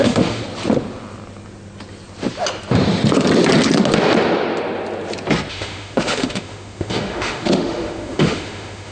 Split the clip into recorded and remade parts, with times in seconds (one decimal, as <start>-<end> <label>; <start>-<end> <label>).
0.0-0.4 remade; 0.4-5.5 recorded; 5.5-8.9 remade